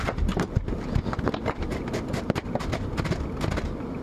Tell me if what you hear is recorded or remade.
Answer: recorded